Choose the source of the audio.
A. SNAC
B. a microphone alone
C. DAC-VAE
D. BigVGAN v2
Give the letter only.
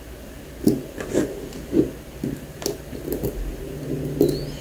B